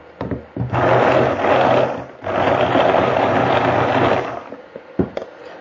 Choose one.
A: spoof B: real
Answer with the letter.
B